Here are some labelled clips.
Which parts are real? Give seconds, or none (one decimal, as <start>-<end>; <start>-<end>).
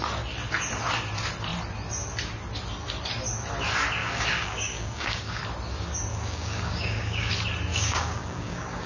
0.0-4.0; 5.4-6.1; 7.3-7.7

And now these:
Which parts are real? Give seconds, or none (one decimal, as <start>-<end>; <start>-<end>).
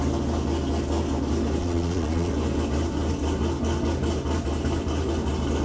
0.0-1.6; 2.3-5.6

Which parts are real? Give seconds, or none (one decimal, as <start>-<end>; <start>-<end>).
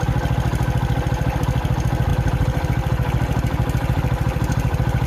0.0-5.1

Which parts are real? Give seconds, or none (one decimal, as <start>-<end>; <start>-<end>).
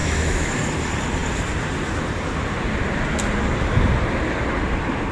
0.5-5.1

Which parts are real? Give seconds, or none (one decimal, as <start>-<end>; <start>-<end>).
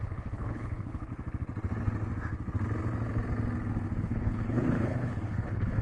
1.1-4.0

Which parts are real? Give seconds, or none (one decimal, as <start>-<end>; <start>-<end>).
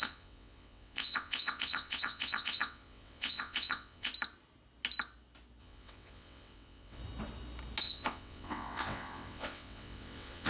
4.1-5.6; 7.0-7.8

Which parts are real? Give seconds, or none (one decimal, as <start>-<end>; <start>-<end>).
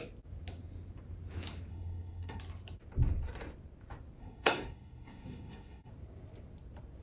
0.0-1.7; 2.4-4.2; 5.9-7.0